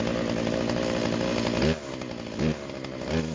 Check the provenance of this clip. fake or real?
real